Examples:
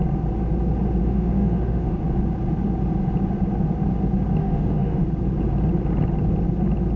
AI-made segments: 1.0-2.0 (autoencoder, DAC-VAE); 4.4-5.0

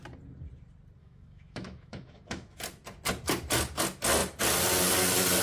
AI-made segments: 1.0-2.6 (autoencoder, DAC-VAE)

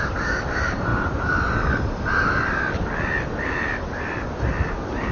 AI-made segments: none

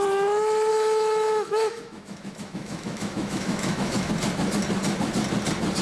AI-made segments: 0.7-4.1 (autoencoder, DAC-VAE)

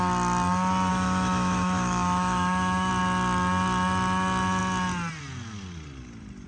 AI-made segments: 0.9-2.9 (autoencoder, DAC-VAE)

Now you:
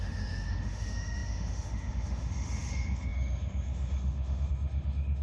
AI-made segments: 0.0-5.2 (autoencoder, DAC-VAE)

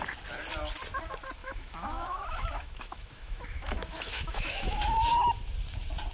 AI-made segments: 1.4-5.1 (autoencoder, DAC-VAE)

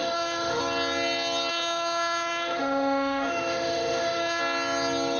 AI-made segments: 0.0-0.6 (autoencoder, DAC-VAE); 1.5-4.4